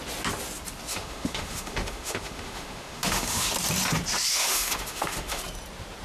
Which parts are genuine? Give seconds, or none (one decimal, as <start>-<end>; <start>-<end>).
0.0-0.9; 3.5-4.3; 5.4-6.0